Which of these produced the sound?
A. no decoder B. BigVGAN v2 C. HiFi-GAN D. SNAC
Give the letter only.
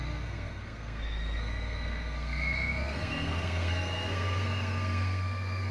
D